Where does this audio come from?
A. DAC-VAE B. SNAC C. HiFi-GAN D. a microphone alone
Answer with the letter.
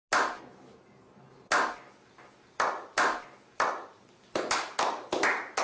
D